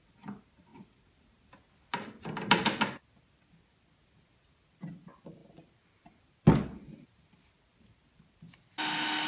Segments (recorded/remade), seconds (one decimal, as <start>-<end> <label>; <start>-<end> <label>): 0.0-9.3 recorded